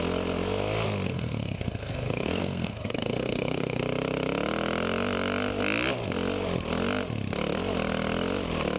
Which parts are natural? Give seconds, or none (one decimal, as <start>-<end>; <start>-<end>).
0.0-1.1; 3.8-8.8